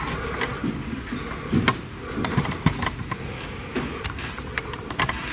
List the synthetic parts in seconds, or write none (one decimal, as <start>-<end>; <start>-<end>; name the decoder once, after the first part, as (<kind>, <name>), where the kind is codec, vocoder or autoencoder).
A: none